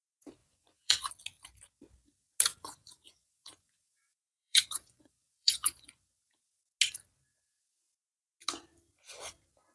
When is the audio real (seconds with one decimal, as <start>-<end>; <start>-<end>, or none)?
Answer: 0.0-0.4; 1.1-2.5; 6.0-9.7